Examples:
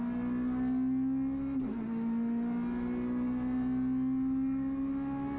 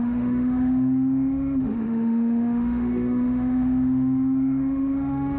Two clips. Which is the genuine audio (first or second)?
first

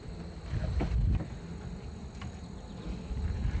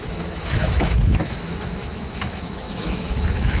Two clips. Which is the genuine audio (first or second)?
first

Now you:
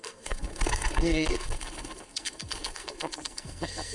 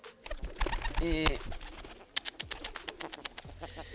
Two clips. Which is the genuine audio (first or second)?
second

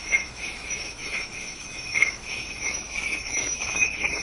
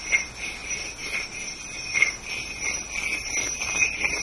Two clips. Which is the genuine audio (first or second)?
second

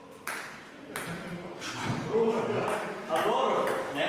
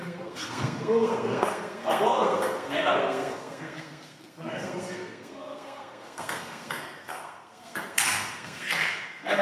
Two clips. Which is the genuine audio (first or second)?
first